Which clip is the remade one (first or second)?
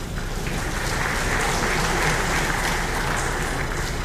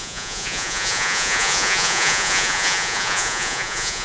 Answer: second